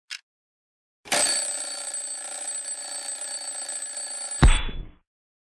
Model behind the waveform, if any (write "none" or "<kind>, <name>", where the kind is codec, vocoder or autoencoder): none